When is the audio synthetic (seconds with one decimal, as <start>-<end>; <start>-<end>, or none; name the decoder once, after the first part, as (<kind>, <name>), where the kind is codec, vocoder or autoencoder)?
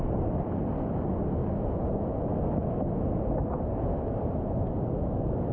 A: none